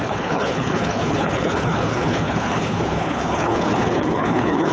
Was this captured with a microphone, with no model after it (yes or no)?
no